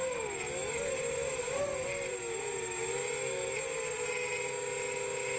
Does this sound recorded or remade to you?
recorded